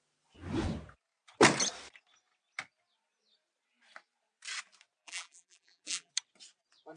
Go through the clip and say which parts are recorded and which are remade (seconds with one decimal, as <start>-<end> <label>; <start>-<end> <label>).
0.0-5.0 recorded; 5.0-6.1 remade; 6.1-7.0 recorded